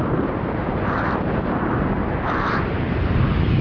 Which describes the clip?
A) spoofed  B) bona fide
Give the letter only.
A